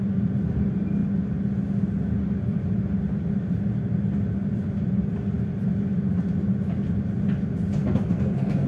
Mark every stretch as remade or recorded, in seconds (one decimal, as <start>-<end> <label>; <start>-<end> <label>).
0.0-7.8 recorded; 7.8-8.7 remade